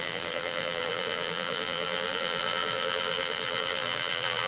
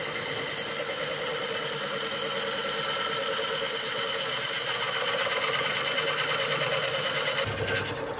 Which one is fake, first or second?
first